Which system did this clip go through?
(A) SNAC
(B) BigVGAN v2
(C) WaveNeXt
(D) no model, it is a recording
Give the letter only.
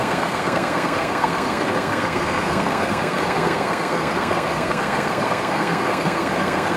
A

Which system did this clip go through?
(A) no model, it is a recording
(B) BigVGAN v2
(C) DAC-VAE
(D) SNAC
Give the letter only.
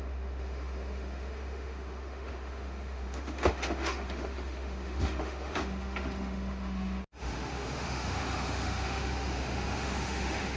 C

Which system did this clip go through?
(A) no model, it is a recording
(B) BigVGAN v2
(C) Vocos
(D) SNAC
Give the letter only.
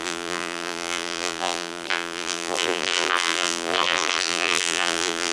B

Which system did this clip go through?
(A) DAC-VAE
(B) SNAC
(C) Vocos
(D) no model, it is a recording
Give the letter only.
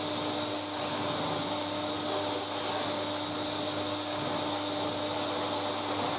D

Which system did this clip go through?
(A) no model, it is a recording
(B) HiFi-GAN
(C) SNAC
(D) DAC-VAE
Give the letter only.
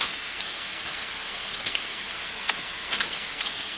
C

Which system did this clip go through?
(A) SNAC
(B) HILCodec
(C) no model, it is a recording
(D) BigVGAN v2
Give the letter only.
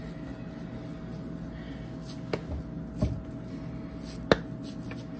C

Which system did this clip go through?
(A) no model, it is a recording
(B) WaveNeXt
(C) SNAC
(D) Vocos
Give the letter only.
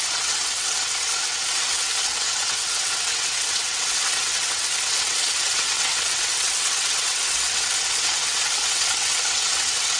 B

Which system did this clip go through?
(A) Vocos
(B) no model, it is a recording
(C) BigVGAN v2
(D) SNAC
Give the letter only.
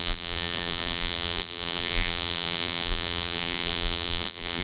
C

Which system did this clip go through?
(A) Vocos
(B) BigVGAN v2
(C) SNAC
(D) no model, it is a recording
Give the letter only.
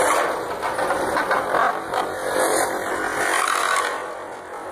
D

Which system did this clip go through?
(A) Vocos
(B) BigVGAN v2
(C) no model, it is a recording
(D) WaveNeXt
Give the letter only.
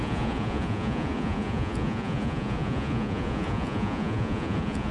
A